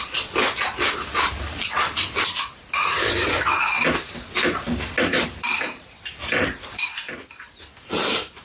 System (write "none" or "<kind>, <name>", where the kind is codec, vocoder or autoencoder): vocoder, BigVGAN v2